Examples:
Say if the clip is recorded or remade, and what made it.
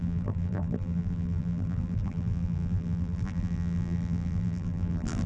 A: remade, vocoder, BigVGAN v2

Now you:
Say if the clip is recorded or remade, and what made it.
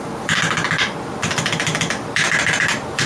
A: remade, vocoder, BigVGAN v2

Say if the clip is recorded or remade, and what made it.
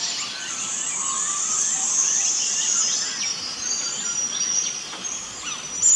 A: recorded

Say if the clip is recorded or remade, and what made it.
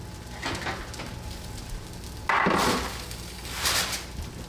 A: recorded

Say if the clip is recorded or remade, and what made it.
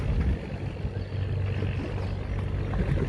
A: recorded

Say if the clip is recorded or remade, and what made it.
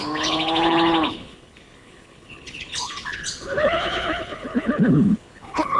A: remade, codec, HILCodec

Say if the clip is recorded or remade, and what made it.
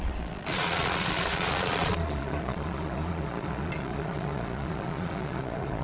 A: remade, vocoder, Vocos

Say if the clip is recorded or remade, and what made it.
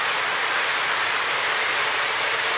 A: recorded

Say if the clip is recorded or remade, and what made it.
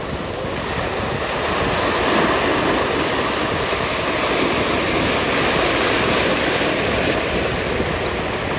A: recorded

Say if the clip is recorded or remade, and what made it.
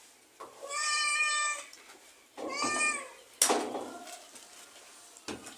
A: recorded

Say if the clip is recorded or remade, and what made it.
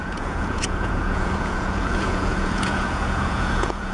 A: remade, vocoder, Vocos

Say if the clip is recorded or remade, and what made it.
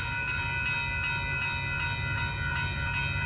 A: recorded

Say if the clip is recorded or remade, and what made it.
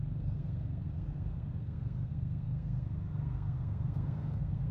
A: remade, codec, SNAC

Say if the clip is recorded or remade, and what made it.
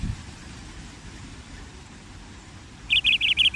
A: remade, vocoder, BigVGAN v2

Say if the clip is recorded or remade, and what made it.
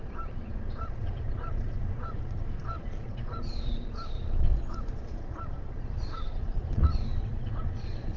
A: remade, vocoder, Vocos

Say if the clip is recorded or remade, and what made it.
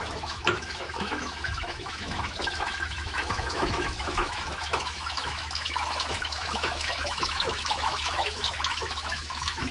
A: remade, autoencoder, DAC-VAE